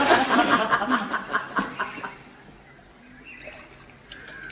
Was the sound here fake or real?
fake